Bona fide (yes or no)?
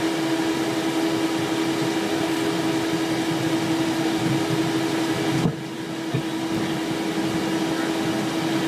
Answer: yes